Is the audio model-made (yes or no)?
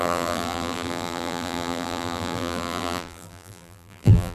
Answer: yes